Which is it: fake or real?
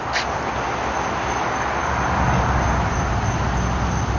real